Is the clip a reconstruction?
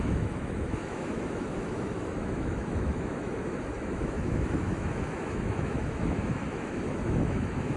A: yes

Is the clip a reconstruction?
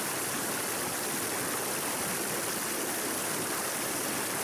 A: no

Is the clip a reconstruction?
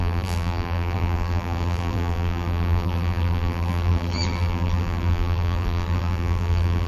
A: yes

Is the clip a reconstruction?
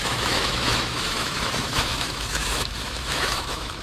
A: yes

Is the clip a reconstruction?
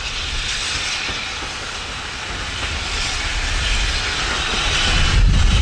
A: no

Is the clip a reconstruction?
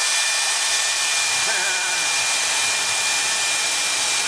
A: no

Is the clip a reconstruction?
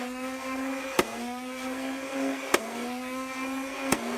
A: yes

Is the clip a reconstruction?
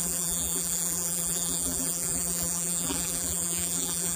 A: yes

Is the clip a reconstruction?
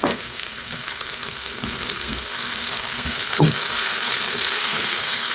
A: yes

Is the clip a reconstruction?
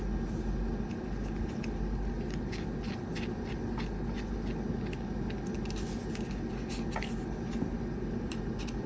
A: no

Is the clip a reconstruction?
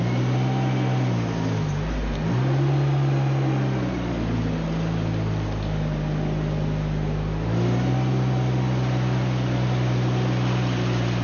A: no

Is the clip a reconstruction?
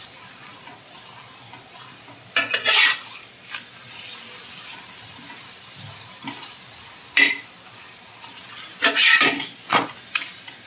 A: no